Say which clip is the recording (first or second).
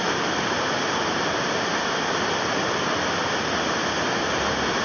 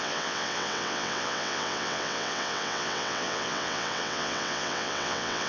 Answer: first